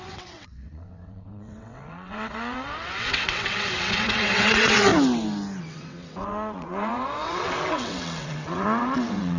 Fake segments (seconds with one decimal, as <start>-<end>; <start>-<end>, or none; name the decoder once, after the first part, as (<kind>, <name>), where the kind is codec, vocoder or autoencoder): 0.0-4.9 (vocoder, WaveNeXt); 5.6-9.4